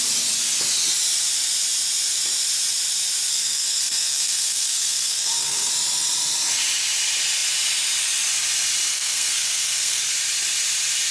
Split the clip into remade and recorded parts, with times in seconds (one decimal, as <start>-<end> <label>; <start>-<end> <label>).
0.0-3.3 recorded; 3.3-5.7 remade; 5.7-8.9 recorded; 8.9-10.0 remade; 10.0-11.1 recorded